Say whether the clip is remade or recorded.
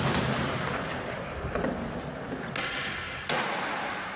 recorded